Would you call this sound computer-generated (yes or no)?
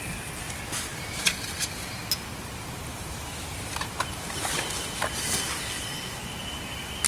no